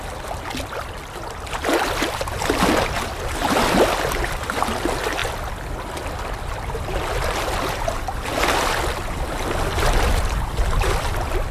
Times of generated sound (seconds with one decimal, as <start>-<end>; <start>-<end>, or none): none